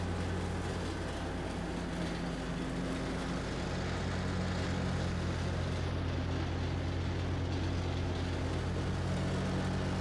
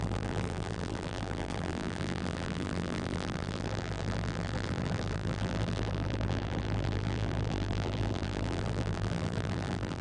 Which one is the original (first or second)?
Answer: first